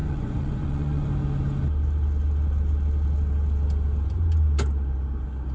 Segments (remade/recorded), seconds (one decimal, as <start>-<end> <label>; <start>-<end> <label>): 0.0-1.1 remade; 1.1-5.5 recorded